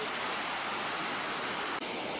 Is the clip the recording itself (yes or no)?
yes